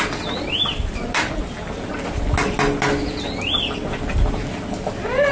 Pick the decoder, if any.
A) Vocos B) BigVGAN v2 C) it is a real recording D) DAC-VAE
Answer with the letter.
C